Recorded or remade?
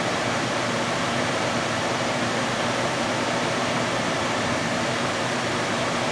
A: remade